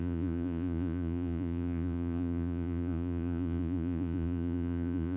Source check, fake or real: fake